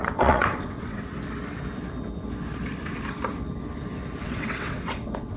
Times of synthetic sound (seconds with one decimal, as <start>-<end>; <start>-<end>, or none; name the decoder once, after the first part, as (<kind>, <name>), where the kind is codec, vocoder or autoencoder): 0.0-1.1 (vocoder, WaveNeXt); 4.2-5.4